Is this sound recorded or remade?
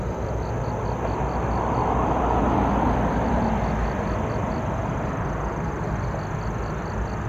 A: recorded